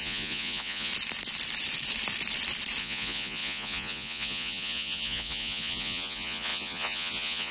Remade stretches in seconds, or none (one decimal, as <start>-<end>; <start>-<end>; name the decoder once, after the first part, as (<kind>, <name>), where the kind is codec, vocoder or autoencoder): 0.0-0.9 (vocoder, Vocos); 2.8-7.5